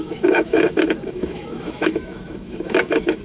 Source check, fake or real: fake